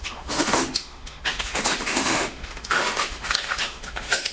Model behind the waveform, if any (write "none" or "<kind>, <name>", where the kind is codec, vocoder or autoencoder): autoencoder, DAC-VAE